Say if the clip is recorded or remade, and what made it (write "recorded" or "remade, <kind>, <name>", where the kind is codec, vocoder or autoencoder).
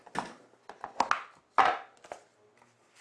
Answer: recorded